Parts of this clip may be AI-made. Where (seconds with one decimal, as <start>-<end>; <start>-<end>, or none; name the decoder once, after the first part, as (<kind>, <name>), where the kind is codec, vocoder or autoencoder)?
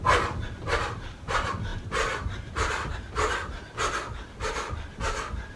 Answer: none